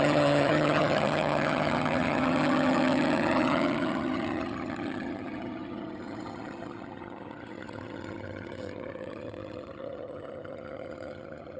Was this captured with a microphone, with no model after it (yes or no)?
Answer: no